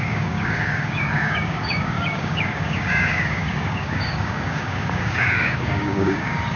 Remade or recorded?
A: remade